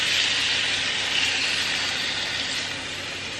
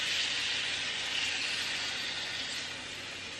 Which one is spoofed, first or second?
second